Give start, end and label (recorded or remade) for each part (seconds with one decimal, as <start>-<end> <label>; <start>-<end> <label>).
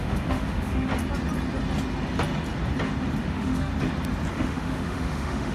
0.0-0.9 remade; 0.9-3.2 recorded; 3.2-3.7 remade; 3.7-4.3 recorded; 4.3-5.5 remade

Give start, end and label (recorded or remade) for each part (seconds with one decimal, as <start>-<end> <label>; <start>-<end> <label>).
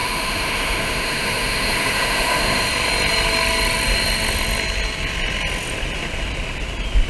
0.0-2.7 remade; 2.7-7.1 recorded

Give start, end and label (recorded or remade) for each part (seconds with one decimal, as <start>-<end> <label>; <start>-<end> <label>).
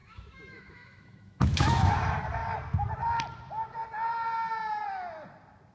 0.0-1.9 remade; 1.9-5.7 recorded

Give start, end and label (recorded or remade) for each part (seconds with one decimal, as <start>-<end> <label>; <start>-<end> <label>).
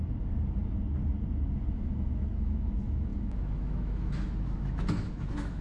0.0-1.7 recorded; 1.7-5.6 remade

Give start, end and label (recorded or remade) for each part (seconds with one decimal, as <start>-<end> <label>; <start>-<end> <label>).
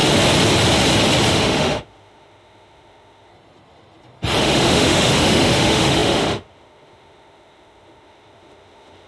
0.0-1.3 recorded; 1.3-3.3 remade; 3.3-4.4 recorded; 4.4-9.1 remade